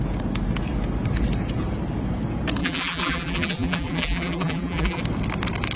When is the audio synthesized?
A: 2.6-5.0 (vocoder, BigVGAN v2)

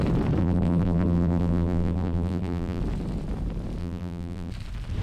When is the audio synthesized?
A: 0.4-2.8 (vocoder, BigVGAN v2); 3.8-4.5

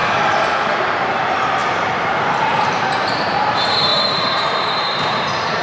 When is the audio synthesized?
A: 0.6-5.6 (vocoder, BigVGAN v2)